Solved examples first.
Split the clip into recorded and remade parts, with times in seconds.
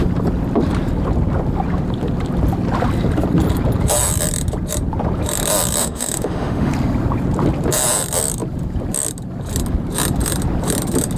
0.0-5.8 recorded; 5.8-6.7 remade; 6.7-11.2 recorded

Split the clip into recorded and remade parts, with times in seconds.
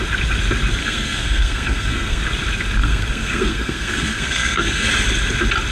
0.0-0.8 recorded; 0.8-2.2 remade; 2.2-2.8 recorded; 2.8-4.9 remade; 4.9-5.7 recorded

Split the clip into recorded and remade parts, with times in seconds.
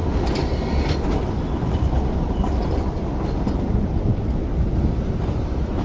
0.0-5.8 recorded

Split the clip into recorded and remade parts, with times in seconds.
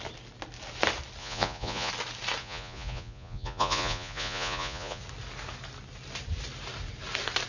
0.0-1.2 recorded; 1.2-1.9 remade; 1.9-2.4 recorded; 2.4-5.0 remade; 5.0-7.5 recorded